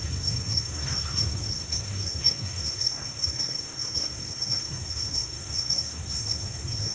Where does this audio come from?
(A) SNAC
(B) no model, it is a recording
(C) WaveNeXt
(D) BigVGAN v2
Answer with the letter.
A